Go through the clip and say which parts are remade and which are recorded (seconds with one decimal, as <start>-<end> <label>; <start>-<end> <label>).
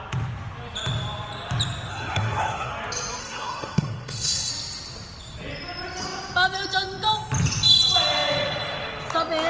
0.0-1.9 recorded; 1.9-2.7 remade; 2.7-3.2 recorded; 3.2-4.5 remade; 4.5-9.5 recorded